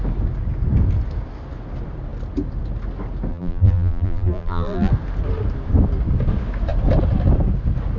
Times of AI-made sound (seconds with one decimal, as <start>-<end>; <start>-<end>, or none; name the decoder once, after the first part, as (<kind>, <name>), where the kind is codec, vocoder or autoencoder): 3.3-4.9 (vocoder, BigVGAN v2)